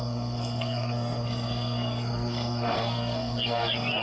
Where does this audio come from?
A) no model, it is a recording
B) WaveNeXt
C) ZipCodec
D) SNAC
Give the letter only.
D